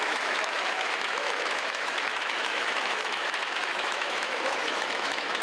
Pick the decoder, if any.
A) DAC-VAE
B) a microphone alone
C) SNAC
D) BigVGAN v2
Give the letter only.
A